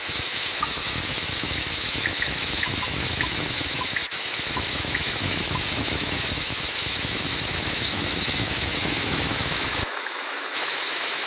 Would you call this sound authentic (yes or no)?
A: no